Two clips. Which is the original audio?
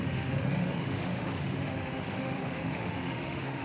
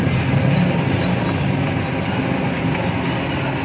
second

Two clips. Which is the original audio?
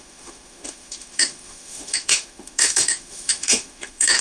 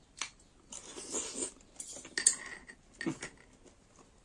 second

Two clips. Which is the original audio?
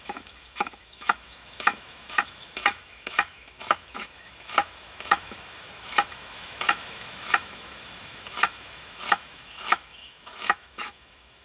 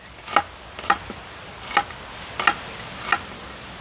second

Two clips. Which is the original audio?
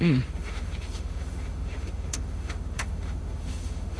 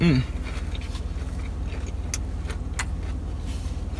second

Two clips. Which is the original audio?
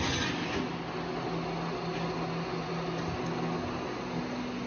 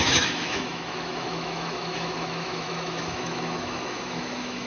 first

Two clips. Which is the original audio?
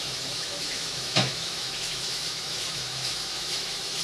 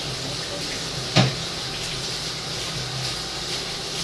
second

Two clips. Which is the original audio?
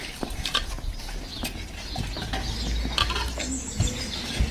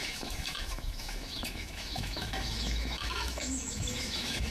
first